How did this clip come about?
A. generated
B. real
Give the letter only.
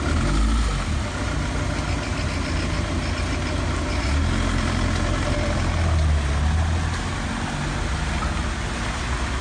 B